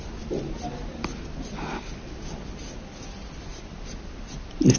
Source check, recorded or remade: recorded